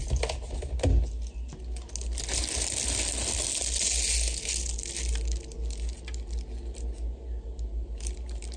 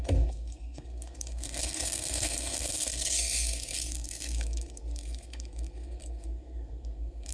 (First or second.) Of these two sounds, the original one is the first